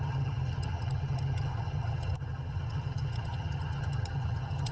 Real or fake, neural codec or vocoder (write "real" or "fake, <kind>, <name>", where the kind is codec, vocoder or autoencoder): fake, vocoder, HiFi-GAN